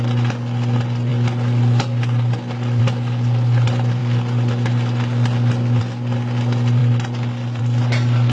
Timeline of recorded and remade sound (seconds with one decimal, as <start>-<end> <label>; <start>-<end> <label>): 0.0-8.3 recorded